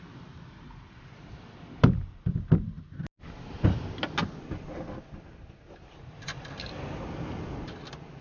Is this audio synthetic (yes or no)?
no